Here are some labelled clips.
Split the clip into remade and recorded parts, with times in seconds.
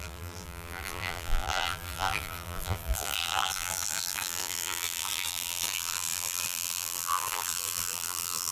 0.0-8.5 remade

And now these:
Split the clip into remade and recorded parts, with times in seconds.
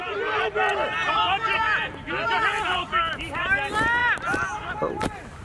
0.0-5.4 recorded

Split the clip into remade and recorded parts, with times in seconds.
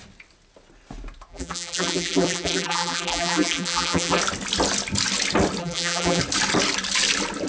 0.0-1.3 recorded; 1.3-4.2 remade; 4.2-5.6 recorded; 5.6-6.2 remade; 6.2-7.5 recorded